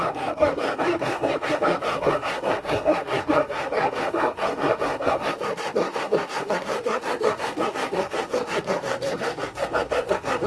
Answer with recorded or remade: remade